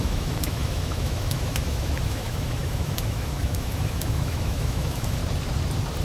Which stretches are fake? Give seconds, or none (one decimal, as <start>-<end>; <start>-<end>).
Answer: 0.0-5.2